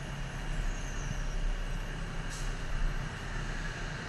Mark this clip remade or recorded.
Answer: recorded